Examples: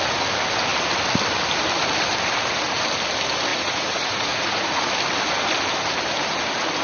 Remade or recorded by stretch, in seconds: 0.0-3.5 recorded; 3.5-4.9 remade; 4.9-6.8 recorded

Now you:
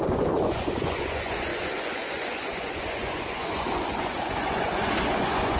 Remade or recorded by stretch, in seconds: 0.0-5.6 remade

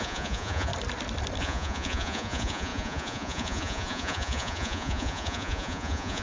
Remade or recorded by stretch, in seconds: 0.0-0.7 remade; 0.7-1.4 recorded; 1.4-6.2 remade